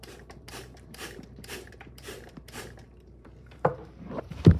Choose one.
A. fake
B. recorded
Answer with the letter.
A